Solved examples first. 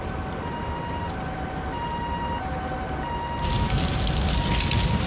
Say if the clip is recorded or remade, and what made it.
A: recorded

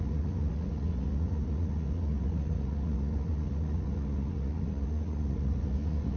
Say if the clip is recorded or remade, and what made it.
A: remade, vocoder, Vocos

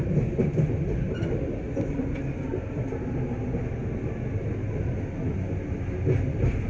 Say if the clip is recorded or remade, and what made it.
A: recorded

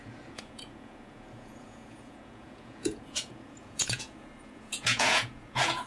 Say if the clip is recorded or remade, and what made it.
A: remade, vocoder, Vocos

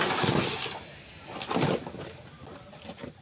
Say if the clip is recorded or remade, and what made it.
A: recorded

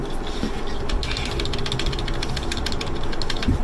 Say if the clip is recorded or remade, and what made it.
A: recorded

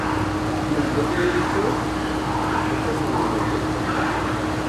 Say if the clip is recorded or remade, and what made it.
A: recorded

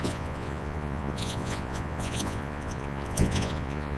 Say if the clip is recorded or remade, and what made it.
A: remade, vocoder, Vocos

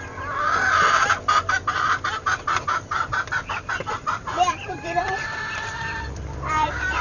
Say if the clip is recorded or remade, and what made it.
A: remade, vocoder, BigVGAN v2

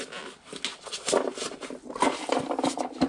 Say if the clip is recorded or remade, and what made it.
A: recorded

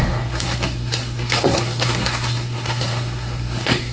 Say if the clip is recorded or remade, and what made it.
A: remade, codec, SNAC